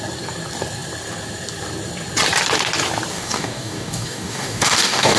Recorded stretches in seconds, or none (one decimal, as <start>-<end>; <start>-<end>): 0.0-3.1